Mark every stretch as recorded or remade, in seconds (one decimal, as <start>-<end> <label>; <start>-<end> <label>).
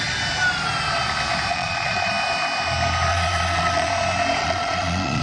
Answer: 0.0-1.5 recorded; 1.5-2.1 remade; 2.1-3.1 recorded; 3.1-3.9 remade; 3.9-4.4 recorded; 4.4-5.2 remade